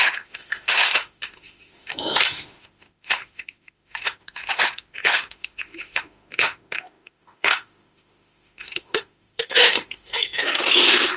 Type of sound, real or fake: fake